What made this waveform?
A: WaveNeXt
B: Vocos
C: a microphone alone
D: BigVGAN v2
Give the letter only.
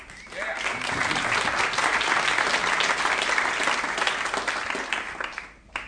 C